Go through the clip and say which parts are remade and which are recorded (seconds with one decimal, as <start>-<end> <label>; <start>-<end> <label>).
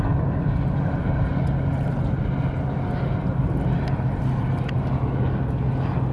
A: 0.0-6.1 recorded